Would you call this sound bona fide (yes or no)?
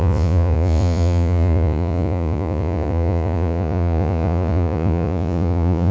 no